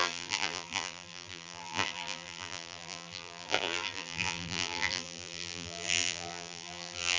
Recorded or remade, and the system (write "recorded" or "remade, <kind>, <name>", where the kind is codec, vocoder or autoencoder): remade, vocoder, BigVGAN v2